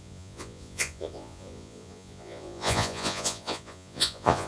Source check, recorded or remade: remade